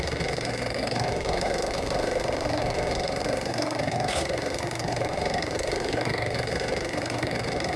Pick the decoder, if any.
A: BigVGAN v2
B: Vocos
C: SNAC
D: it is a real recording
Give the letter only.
C